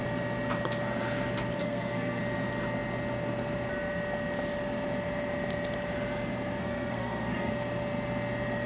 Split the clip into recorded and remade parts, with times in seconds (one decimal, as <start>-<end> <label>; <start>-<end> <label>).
0.0-1.6 recorded; 1.6-2.2 remade; 2.2-6.6 recorded; 6.6-7.5 remade; 7.5-8.7 recorded